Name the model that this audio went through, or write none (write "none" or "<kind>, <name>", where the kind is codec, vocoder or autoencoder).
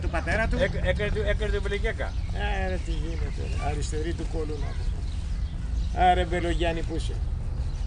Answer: none